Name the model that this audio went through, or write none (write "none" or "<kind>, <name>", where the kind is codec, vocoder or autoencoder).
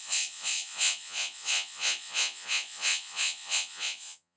vocoder, Vocos